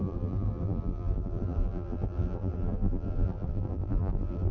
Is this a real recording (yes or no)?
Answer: no